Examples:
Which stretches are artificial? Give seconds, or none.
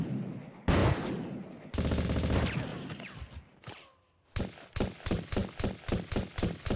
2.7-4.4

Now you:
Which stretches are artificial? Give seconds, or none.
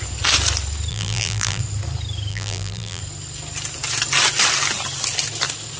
0.9-1.6; 2.3-3.0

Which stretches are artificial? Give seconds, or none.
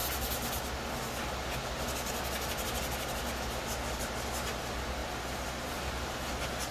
5.0-6.2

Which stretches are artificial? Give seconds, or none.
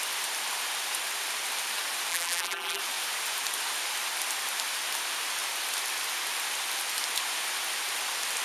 2.1-2.8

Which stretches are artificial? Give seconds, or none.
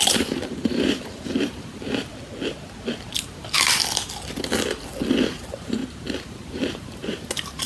0.0-2.1; 5.3-7.7